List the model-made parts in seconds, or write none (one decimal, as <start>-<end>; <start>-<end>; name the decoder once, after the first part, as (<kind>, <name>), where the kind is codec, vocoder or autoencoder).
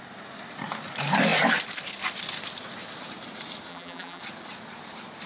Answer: 3.7-4.2 (vocoder, BigVGAN v2)